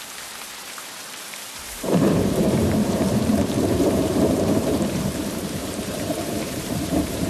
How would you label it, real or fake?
fake